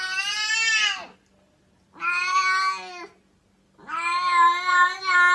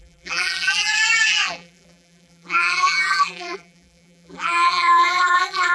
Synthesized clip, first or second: second